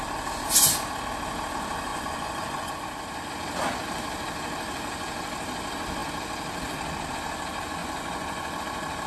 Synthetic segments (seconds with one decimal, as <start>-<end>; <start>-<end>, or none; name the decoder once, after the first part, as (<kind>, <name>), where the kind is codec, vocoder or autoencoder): 1.9-2.7 (vocoder, Vocos); 7.8-8.6